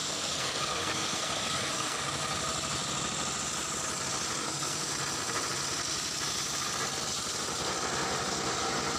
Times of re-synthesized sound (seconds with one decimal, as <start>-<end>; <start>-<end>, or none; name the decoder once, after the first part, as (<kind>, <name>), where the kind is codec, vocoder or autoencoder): 0.0-2.0 (codec, SNAC); 4.4-4.9